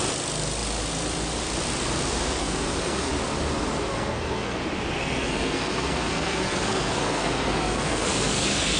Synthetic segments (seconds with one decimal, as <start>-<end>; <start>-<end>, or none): 2.4-3.1; 3.9-4.6; 5.0-8.8